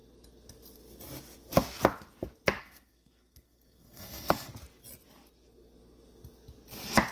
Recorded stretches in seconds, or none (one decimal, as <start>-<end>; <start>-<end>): 0.0-2.6; 4.5-7.1